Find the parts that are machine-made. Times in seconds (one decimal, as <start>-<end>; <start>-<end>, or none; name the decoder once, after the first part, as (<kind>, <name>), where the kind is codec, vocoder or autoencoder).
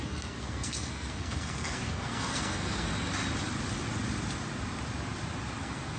0.0-2.9 (codec, SNAC); 5.6-6.0